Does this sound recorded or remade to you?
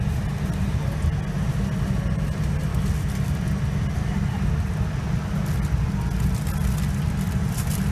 recorded